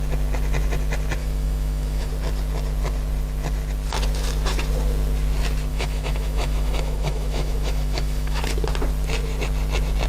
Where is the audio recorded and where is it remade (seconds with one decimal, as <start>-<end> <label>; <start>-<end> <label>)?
0.0-1.2 recorded; 1.2-2.1 remade; 2.1-5.7 recorded; 5.7-8.4 remade; 8.4-10.1 recorded